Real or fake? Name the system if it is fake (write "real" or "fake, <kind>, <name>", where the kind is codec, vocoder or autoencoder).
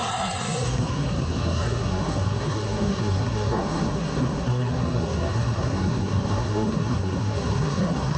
fake, codec, SNAC